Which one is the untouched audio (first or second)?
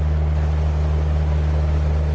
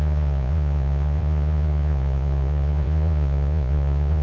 first